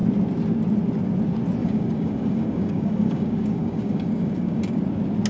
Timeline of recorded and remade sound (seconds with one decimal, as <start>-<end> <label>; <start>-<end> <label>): 0.0-1.6 recorded; 1.6-4.8 remade; 4.8-5.3 recorded